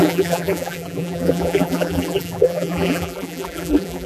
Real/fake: fake